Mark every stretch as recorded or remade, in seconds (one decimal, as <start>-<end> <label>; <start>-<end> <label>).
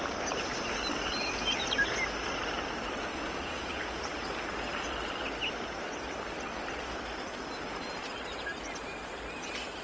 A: 0.0-3.1 recorded; 3.1-4.0 remade; 4.0-9.8 recorded